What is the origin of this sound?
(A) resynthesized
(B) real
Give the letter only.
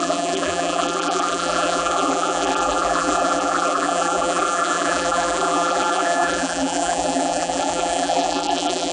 A